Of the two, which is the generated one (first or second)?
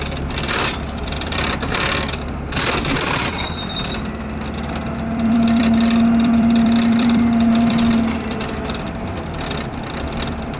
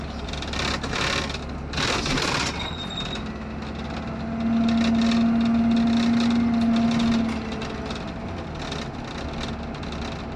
first